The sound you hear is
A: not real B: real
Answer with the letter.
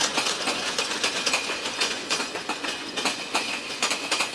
A